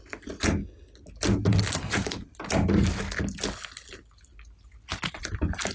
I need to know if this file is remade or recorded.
recorded